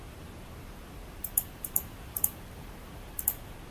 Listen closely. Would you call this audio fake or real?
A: fake